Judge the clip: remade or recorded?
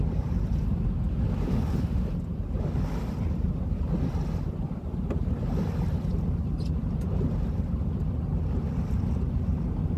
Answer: recorded